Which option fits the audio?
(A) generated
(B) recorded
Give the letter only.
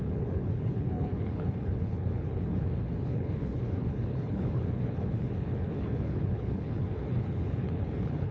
A